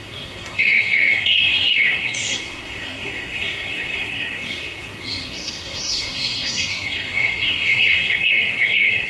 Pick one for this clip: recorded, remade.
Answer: remade